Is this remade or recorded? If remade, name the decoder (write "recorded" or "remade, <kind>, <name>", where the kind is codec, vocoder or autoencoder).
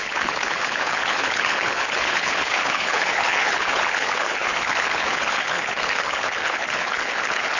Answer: remade, codec, HILCodec